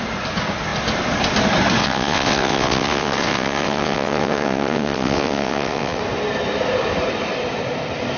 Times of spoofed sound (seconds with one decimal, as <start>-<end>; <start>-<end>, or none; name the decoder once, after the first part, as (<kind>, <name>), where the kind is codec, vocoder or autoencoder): 1.8-6.0 (vocoder, WaveNeXt)